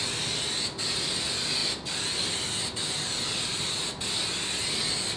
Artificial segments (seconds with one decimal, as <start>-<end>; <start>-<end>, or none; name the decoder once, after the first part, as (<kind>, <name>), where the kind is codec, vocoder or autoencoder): none